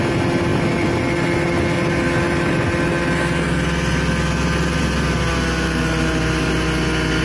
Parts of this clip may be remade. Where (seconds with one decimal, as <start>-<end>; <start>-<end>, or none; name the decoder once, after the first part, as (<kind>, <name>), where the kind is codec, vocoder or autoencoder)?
none